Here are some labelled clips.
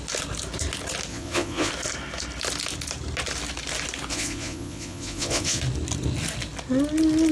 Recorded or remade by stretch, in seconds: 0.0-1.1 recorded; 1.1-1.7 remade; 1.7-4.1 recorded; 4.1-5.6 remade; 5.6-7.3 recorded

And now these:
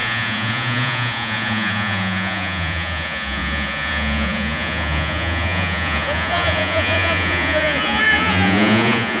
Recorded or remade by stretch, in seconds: 0.0-9.2 remade

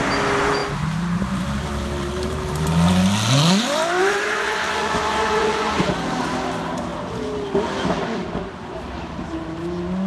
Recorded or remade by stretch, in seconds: 0.0-4.0 recorded; 4.0-5.8 remade; 5.8-10.1 recorded

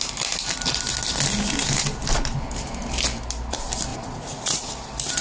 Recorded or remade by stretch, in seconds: 0.0-3.9 recorded; 3.9-4.7 remade; 4.7-5.2 recorded

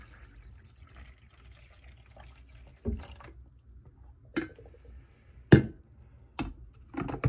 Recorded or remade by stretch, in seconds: 0.0-7.3 recorded

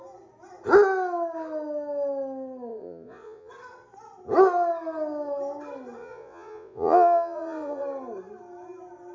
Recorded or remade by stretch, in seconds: 0.0-2.7 recorded; 2.7-3.5 remade; 3.5-6.0 recorded; 6.0-7.8 remade; 7.8-9.1 recorded

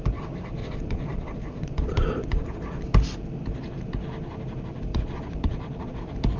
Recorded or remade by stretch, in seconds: 0.0-0.6 recorded; 0.6-2.9 remade; 2.9-4.9 recorded; 4.9-6.0 remade; 6.0-6.4 recorded

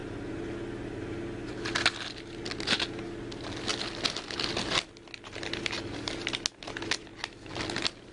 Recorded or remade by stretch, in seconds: 0.0-8.1 recorded